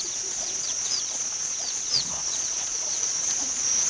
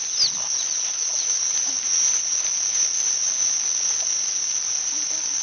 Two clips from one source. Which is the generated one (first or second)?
first